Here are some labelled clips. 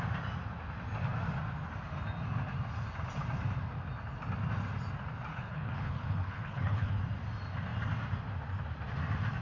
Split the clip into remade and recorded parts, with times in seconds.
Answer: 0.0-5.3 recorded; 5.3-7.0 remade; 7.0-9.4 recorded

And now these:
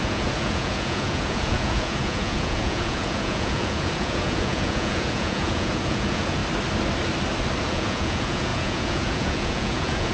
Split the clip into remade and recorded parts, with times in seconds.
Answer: 0.0-6.4 remade; 6.4-7.6 recorded; 7.6-10.1 remade

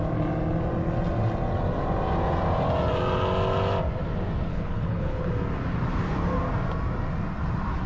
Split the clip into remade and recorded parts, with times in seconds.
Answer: 0.0-4.5 recorded; 4.5-5.3 remade; 5.3-7.9 recorded

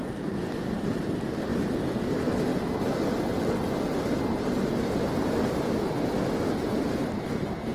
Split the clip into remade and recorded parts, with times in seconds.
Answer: 0.0-1.1 remade; 1.1-1.5 recorded; 1.5-2.1 remade; 2.1-7.7 recorded

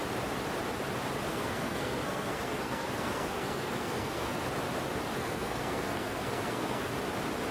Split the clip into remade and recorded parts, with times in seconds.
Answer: 0.0-1.3 recorded; 1.3-4.4 remade; 4.4-5.2 recorded; 5.2-6.9 remade; 6.9-7.5 recorded